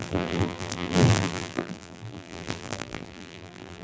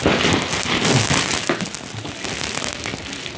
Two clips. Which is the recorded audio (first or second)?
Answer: second